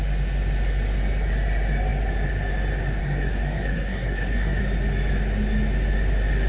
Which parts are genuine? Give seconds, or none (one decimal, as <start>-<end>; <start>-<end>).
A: 0.0-3.0; 4.6-6.5